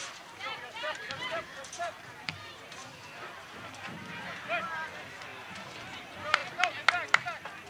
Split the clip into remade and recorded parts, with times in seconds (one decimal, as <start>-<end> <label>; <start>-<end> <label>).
0.0-2.8 remade; 2.8-4.6 recorded; 4.6-5.3 remade; 5.3-6.0 recorded; 6.0-6.4 remade; 6.4-7.7 recorded